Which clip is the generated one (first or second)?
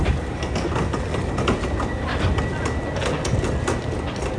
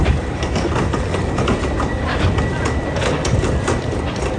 second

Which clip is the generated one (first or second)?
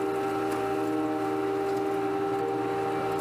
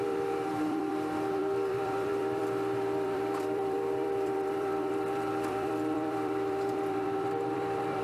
second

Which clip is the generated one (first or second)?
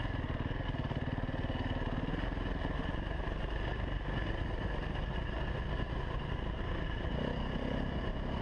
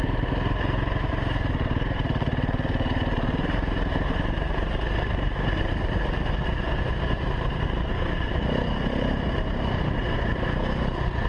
second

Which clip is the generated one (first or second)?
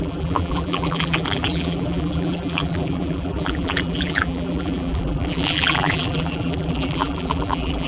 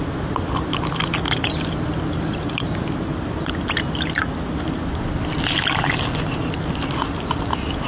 first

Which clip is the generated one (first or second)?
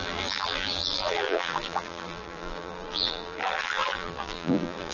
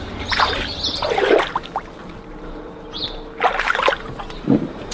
first